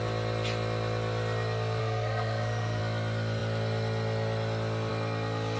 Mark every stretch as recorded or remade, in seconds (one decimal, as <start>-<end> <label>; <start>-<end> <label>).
0.0-1.8 recorded; 1.8-2.8 remade; 2.8-5.6 recorded